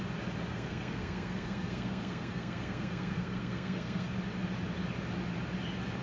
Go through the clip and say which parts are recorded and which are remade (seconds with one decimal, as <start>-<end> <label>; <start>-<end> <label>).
0.0-0.5 recorded; 0.5-4.1 remade; 4.1-6.0 recorded